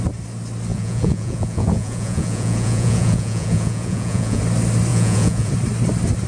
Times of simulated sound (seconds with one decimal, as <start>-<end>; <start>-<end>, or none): 0.7-4.4; 4.9-5.5